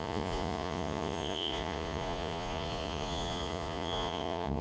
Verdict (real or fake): fake